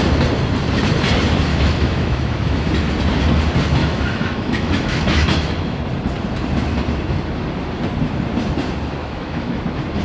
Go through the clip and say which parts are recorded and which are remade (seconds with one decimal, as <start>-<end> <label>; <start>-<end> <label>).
0.0-1.5 recorded; 1.5-2.7 remade; 2.7-3.8 recorded; 3.8-5.8 remade; 5.8-9.0 recorded; 9.0-9.6 remade; 9.6-10.0 recorded